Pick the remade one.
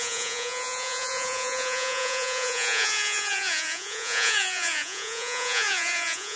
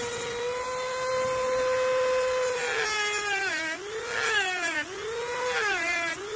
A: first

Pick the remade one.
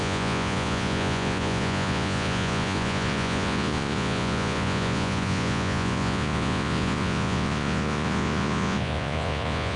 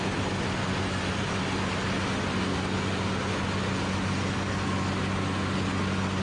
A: first